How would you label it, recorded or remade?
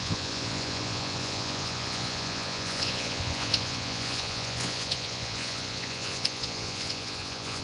remade